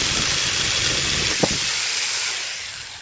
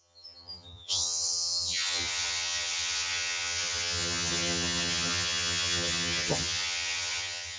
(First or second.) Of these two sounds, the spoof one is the second